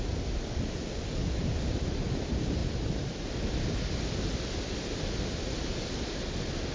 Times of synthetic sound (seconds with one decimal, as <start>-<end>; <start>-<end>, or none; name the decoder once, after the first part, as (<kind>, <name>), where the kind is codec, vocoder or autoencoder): none